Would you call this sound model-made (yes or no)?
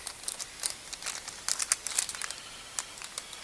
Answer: no